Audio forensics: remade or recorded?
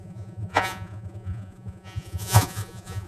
remade